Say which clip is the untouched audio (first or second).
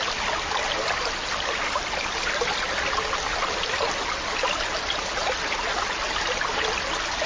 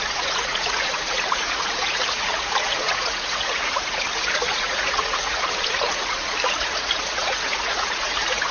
first